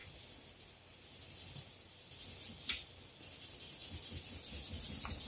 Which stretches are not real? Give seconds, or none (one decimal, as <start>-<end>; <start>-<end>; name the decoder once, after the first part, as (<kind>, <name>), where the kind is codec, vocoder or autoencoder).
none

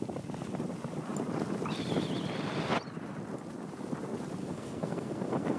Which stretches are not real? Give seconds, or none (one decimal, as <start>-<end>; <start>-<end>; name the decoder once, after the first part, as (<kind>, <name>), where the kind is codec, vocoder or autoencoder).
4.4-5.6 (codec, SNAC)

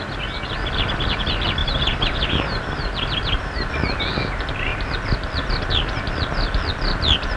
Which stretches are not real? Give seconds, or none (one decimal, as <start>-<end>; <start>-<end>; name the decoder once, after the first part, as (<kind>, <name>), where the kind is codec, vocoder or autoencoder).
1.6-3.7 (vocoder, BigVGAN v2)

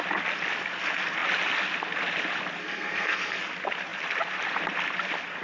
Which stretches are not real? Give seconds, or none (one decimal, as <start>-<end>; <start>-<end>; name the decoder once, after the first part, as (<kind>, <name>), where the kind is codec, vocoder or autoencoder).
2.6-3.4 (codec, SNAC)

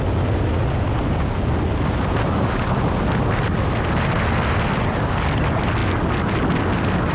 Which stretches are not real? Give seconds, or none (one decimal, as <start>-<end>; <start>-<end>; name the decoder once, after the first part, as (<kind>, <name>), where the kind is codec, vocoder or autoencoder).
none

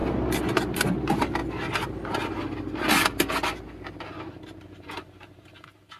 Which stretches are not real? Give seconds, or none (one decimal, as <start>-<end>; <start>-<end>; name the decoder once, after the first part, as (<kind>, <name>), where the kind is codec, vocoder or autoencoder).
0.5-1.4 (vocoder, BigVGAN v2); 4.2-6.0